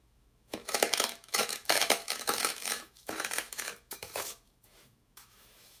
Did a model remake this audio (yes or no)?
yes